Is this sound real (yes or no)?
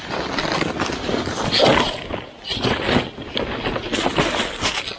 yes